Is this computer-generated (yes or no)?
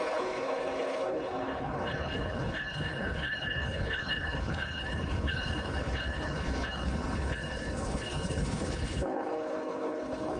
yes